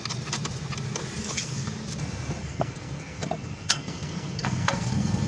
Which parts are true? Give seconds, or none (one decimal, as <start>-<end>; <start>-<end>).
0.0-1.2; 1.7-2.4